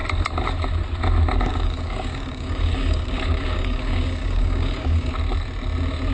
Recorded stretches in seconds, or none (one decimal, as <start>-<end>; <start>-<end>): 0.0-1.5; 5.1-6.1